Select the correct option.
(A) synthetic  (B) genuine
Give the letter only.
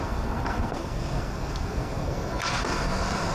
A